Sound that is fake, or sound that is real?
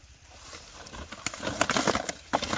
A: real